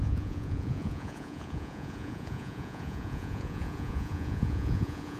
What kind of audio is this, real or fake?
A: fake